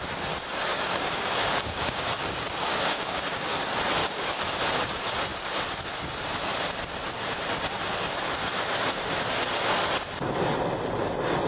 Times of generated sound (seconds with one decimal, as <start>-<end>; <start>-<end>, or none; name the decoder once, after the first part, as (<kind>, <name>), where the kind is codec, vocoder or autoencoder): 0.7-3.6 (codec, DAC); 4.0-4.6

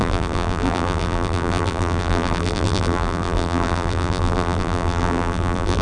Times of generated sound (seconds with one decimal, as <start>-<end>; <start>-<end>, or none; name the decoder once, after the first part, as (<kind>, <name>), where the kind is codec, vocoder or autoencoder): 0.0-5.8 (vocoder, BigVGAN v2)

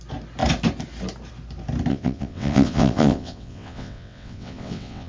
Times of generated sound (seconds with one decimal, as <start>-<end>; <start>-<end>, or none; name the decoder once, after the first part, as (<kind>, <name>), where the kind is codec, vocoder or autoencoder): 1.9-5.1 (vocoder, WaveNeXt)